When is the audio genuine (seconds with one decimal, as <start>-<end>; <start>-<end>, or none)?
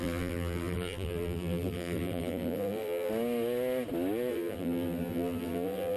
3.1-4.3